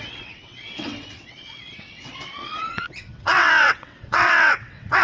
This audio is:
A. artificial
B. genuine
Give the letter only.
A